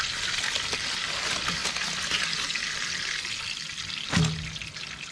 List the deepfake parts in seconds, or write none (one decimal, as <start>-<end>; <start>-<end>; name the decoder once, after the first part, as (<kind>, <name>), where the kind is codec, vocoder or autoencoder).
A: none